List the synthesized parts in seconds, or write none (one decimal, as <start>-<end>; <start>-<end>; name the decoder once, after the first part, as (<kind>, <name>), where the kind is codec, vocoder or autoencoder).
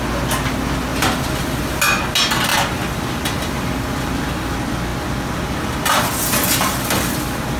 0.9-1.7 (vocoder, BigVGAN v2); 2.5-4.5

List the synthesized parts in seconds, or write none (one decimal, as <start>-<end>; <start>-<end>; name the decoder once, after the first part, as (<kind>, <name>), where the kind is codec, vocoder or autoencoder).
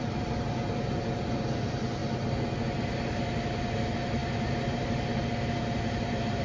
0.0-6.4 (vocoder, BigVGAN v2)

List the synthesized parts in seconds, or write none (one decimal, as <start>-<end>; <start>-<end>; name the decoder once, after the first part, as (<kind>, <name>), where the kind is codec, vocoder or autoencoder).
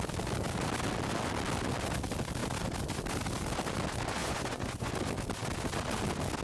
4.2-4.9 (vocoder, Vocos)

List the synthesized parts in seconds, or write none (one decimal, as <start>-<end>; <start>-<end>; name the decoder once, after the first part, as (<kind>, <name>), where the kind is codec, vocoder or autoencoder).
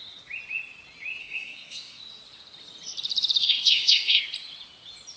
1.2-2.0 (codec, SNAC); 3.4-4.2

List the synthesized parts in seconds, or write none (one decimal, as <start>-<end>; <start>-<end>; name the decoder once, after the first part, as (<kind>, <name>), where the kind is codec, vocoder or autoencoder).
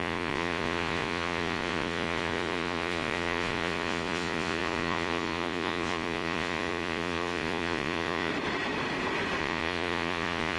0.0-8.3 (vocoder, Vocos); 9.4-10.6